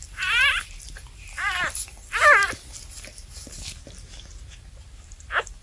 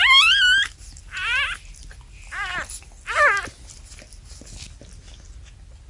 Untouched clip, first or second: second